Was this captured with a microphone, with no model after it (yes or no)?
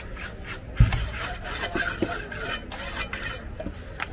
yes